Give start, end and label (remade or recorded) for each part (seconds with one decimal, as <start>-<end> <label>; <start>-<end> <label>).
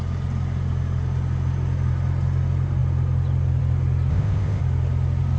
0.0-4.1 recorded; 4.1-4.6 remade; 4.6-5.4 recorded